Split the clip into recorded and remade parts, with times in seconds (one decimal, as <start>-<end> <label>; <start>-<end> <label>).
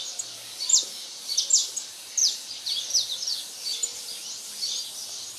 0.0-5.4 recorded